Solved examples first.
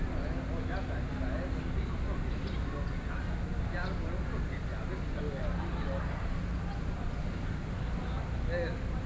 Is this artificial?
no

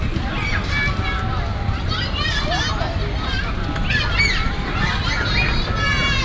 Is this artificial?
no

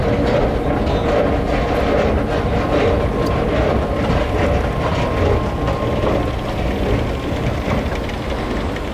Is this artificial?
no